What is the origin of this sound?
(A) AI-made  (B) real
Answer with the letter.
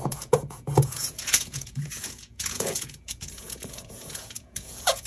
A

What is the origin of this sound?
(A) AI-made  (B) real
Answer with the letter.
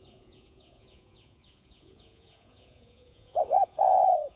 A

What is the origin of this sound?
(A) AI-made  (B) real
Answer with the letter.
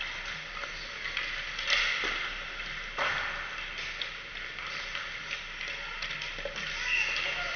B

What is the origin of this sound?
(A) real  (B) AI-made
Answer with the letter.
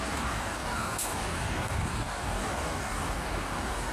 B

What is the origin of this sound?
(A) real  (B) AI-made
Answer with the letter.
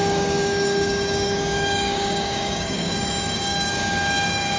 B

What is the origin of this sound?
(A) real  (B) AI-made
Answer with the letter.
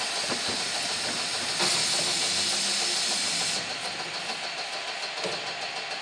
A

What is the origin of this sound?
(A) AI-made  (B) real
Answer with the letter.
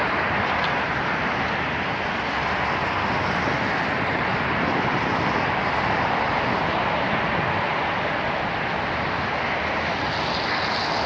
B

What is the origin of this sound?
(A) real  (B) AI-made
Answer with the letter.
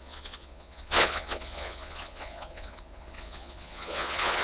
B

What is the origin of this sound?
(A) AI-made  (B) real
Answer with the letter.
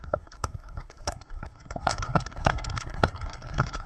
A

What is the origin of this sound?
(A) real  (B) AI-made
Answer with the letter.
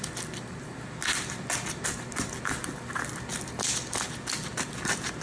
A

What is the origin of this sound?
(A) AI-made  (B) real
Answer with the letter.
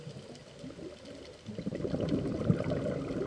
B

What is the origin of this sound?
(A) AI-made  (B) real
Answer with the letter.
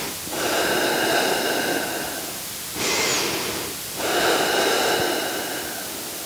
B